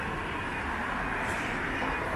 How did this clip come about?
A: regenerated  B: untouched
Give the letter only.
B